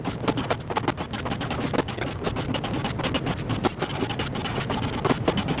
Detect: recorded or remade recorded